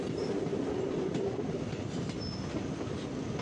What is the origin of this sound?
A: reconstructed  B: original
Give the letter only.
B